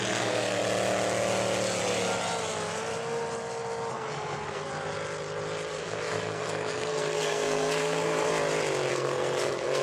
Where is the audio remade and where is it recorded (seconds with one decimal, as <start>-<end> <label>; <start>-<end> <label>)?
0.0-0.6 remade; 0.6-3.9 recorded; 3.9-4.7 remade; 4.7-5.7 recorded; 5.7-8.3 remade; 8.3-8.9 recorded; 8.9-9.8 remade